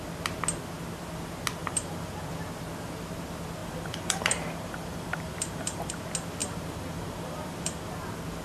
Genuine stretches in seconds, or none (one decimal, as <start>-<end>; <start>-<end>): 0.0-1.6; 2.3-3.6; 5.9-6.4; 7.9-8.4